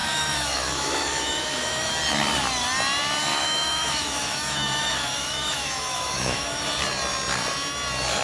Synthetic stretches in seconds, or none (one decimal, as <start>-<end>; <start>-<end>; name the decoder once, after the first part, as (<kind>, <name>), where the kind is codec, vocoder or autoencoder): 0.0-1.9 (autoencoder, DAC-VAE); 3.3-6.6